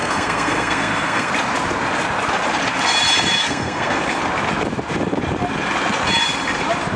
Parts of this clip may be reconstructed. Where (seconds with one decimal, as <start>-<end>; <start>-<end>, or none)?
0.0-1.3; 3.4-4.0